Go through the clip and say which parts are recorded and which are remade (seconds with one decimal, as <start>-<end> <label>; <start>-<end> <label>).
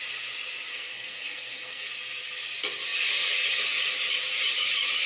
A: 0.0-0.7 recorded; 0.7-1.9 remade; 1.9-5.1 recorded